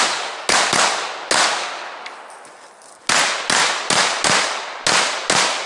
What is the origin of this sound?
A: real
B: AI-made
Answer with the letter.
A